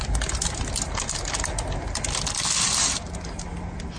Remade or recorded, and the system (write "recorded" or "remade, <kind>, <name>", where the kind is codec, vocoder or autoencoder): recorded